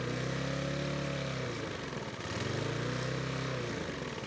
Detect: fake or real real